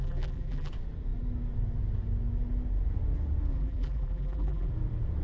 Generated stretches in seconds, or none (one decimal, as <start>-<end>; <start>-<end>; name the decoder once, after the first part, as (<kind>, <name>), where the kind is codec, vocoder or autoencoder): 0.0-0.7 (vocoder, BigVGAN v2); 3.5-4.7